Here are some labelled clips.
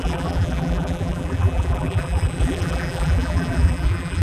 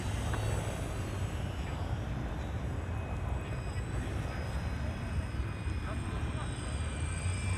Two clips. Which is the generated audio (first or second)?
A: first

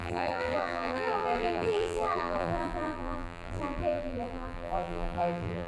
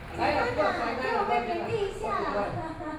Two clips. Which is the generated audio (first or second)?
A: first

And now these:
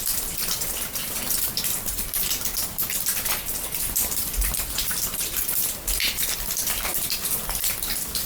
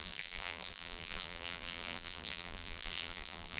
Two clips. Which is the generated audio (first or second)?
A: second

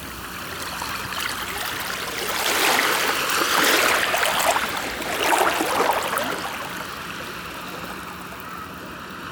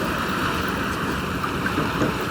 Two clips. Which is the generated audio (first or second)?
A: second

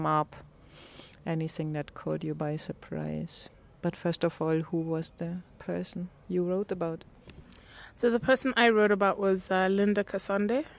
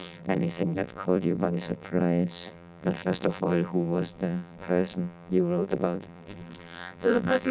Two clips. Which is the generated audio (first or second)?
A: second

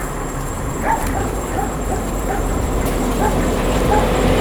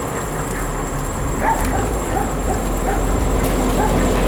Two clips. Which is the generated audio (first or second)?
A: first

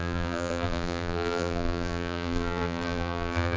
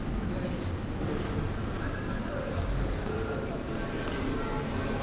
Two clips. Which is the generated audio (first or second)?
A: first